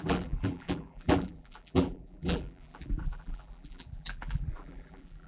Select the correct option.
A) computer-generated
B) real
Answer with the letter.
A